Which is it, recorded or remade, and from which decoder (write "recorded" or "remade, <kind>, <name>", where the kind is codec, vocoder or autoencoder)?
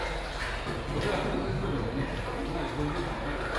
recorded